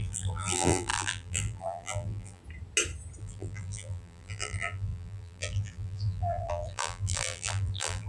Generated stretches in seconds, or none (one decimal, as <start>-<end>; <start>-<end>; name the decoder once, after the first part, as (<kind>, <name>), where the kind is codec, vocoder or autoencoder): 0.0-2.4 (vocoder, BigVGAN v2); 3.2-8.1